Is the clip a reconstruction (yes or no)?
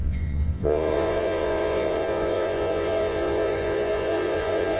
yes